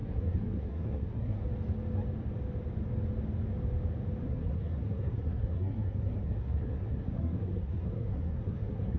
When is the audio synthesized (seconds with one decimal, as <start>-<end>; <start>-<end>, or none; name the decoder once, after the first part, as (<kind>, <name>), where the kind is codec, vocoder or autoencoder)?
0.0-1.4 (codec, SNAC); 4.2-9.0